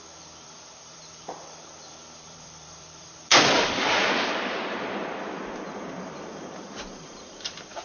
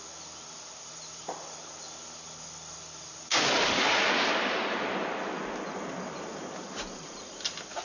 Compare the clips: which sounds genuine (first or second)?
second